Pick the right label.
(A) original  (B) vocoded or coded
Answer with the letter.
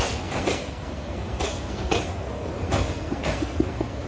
B